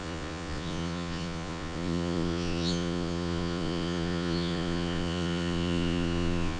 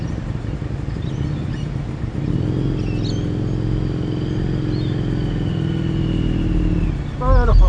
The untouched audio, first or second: second